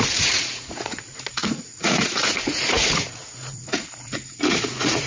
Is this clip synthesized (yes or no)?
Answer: yes